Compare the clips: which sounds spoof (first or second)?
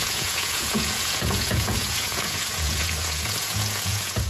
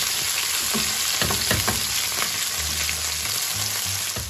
first